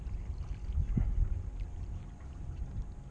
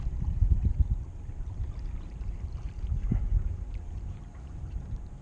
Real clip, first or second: first